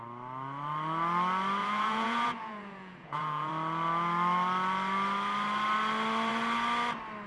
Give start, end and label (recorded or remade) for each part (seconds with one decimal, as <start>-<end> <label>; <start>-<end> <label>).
0.0-1.6 recorded; 1.6-3.5 remade; 3.5-7.3 recorded